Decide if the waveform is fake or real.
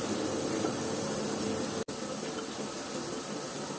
real